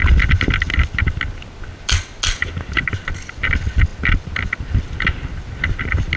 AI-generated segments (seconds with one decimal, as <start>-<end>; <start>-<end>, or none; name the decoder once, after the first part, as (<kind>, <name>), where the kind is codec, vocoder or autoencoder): none